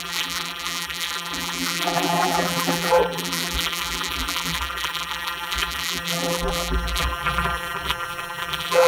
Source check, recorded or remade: remade